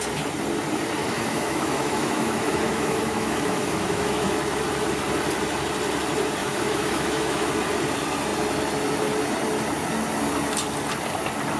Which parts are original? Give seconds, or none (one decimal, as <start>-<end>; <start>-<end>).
0.0-1.0; 4.6-6.4; 7.5-11.6